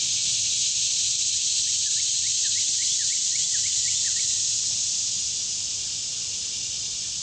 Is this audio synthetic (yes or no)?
no